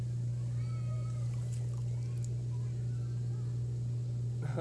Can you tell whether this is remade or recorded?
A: recorded